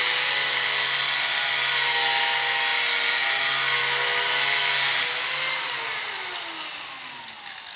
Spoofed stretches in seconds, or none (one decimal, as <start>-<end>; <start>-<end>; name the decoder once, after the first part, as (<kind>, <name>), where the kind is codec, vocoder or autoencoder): none